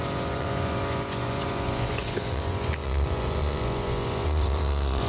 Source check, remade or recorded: remade